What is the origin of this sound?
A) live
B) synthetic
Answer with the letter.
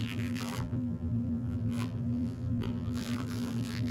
B